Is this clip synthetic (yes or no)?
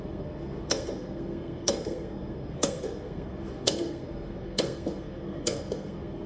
yes